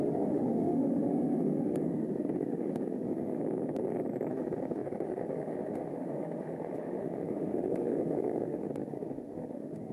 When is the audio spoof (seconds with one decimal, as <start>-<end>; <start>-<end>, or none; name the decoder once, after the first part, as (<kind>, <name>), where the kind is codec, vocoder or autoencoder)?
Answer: 0.0-3.4 (autoencoder, DAC-VAE); 4.3-9.9

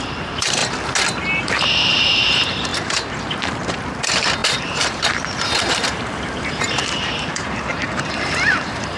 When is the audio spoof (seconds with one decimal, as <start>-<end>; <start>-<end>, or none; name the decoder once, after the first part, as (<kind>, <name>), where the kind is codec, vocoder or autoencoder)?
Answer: 0.0-0.6 (vocoder, BigVGAN v2); 1.2-9.0

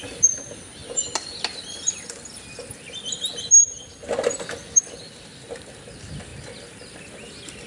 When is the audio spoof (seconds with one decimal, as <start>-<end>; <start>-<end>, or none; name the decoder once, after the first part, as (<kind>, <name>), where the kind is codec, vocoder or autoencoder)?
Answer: none